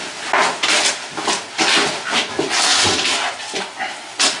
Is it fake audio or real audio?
real